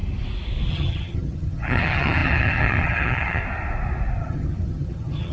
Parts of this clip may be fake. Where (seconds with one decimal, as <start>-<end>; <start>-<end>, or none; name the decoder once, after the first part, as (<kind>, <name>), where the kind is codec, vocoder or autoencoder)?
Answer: 0.7-3.4 (vocoder, HiFi-GAN); 4.2-5.3